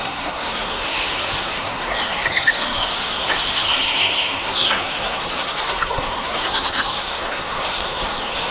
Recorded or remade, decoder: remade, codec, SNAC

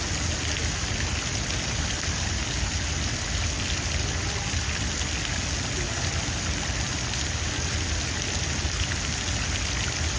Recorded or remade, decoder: recorded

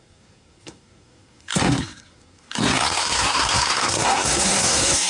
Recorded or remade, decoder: remade, codec, SNAC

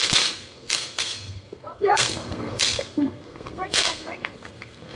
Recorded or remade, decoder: remade, codec, SNAC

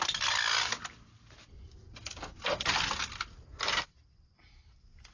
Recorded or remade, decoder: recorded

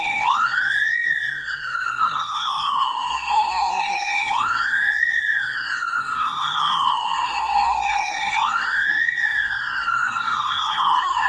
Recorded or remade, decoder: remade, codec, SNAC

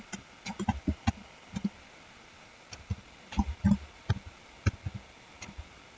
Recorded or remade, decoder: recorded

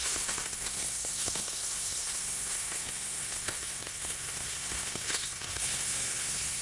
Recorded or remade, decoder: remade, codec, SNAC